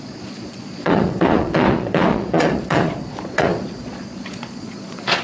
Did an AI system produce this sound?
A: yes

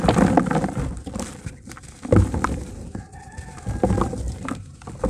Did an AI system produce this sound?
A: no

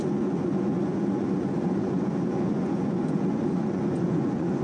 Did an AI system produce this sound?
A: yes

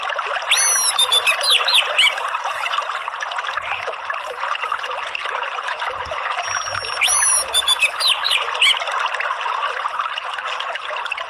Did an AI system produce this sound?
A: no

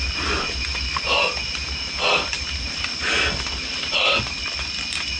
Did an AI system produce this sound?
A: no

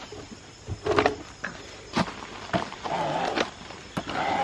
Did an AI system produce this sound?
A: no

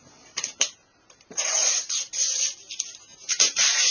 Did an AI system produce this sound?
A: yes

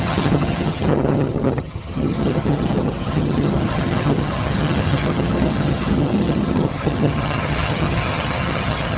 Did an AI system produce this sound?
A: yes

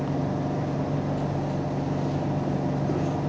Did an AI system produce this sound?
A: no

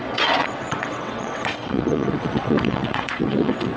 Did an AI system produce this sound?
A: yes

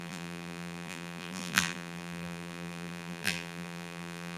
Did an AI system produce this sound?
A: yes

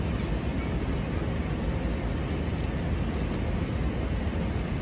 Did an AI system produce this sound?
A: no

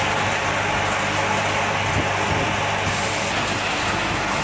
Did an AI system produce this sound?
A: no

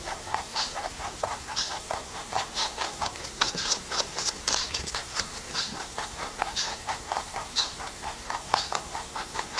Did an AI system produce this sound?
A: yes